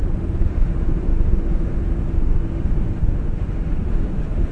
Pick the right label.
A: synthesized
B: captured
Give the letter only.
A